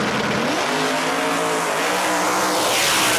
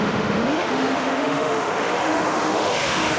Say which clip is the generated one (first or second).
second